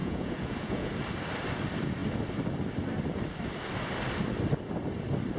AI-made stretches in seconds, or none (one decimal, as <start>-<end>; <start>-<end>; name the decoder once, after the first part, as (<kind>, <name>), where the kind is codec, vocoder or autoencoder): 0.0-0.9 (vocoder, Vocos)